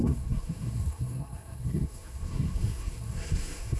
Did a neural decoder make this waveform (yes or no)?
yes